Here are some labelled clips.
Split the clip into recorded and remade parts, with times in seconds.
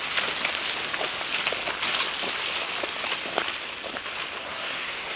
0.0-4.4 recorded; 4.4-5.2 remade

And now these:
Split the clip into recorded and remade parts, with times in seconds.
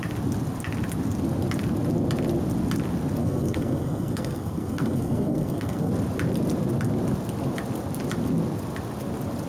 0.0-3.2 recorded; 3.2-5.9 remade; 5.9-9.5 recorded